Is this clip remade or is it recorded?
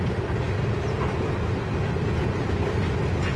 recorded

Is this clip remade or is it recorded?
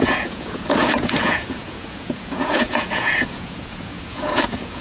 remade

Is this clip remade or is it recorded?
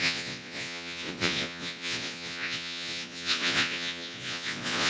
remade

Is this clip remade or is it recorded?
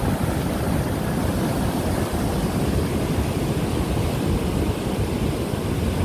recorded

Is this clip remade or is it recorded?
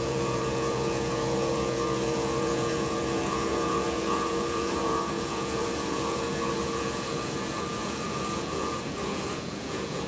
remade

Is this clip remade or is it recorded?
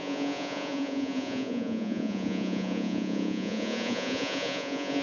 remade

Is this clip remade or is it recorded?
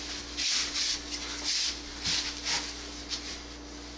recorded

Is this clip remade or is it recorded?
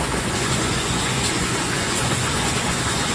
remade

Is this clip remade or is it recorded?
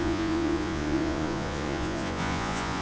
remade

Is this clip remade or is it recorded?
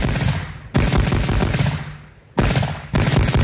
recorded